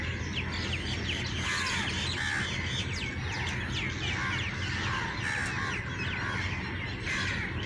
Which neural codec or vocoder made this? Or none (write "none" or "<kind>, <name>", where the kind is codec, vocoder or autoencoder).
none